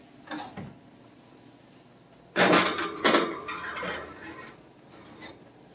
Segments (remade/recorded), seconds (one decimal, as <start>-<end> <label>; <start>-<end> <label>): 0.0-5.7 recorded